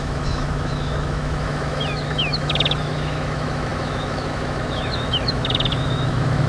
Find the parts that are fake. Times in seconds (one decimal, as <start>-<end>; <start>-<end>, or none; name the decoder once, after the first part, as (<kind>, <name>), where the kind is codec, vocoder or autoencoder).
0.0-6.5 (autoencoder, DAC-VAE)